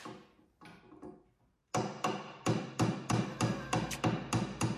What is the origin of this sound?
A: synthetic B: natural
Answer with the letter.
B